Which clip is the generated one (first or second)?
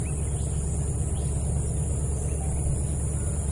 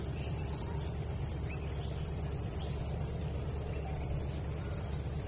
second